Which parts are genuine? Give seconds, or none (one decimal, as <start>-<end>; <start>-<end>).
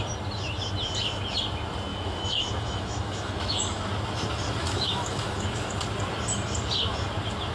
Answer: 0.0-1.9; 3.9-4.6; 5.7-7.5